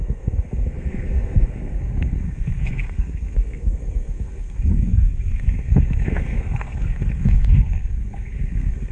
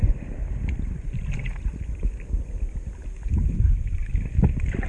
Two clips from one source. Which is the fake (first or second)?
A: first